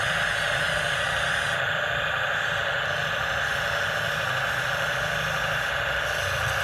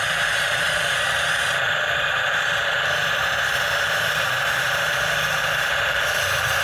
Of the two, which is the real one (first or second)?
first